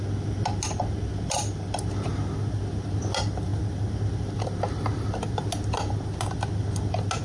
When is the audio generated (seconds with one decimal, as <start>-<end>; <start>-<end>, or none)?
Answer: none